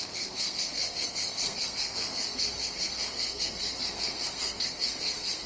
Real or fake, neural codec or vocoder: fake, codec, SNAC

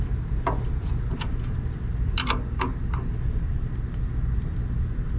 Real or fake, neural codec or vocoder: real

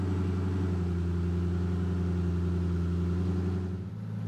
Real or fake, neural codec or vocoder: real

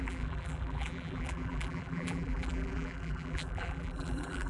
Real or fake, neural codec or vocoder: fake, vocoder, BigVGAN v2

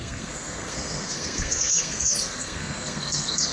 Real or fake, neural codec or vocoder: fake, codec, SNAC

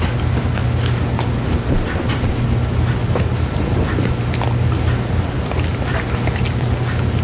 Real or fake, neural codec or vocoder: real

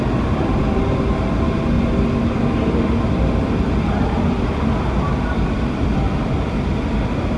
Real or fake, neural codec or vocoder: real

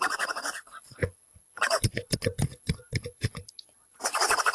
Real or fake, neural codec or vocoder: fake, vocoder, Vocos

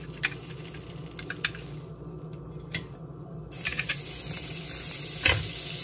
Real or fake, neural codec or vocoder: real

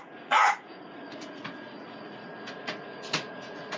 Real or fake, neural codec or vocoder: fake, vocoder, Vocos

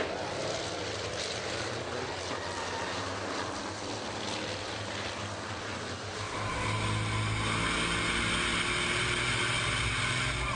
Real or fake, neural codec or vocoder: real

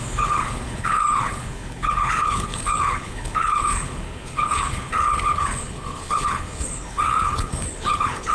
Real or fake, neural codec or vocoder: fake, codec, HILCodec